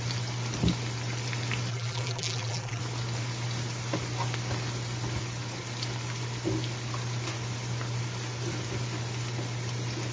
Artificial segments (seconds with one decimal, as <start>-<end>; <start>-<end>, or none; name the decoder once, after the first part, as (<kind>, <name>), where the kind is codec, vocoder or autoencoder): 1.7-2.8 (vocoder, BigVGAN v2)

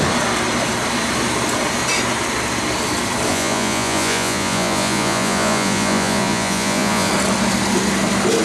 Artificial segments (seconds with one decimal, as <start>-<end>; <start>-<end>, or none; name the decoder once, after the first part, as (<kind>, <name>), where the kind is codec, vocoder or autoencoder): 3.3-7.1 (vocoder, Vocos)

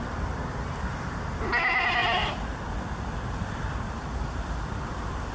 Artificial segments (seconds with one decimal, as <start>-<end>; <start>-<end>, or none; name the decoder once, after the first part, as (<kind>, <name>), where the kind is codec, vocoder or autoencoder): none

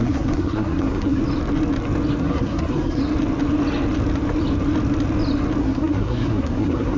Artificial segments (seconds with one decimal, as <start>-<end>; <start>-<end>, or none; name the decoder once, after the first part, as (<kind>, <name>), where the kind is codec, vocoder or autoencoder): 0.0-1.2 (codec, SNAC); 2.2-3.0; 5.6-7.0

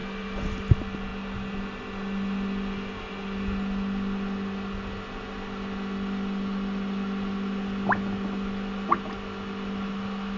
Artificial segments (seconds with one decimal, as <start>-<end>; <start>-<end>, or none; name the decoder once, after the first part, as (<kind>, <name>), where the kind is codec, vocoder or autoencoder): none

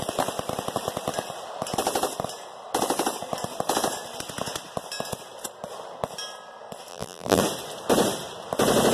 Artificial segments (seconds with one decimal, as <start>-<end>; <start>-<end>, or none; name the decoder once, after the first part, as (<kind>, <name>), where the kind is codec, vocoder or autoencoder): 6.9-7.4 (vocoder, BigVGAN v2)

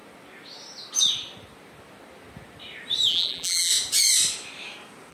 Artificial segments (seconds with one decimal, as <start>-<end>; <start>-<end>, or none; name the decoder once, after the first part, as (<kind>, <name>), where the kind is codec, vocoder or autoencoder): 3.1-3.7 (vocoder, BigVGAN v2)

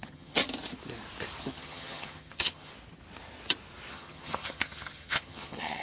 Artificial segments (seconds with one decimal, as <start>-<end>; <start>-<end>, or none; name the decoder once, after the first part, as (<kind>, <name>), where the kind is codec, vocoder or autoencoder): 0.0-0.4 (vocoder, HiFi-GAN); 1.4-2.7; 3.9-5.8